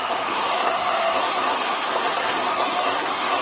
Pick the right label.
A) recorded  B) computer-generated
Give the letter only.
B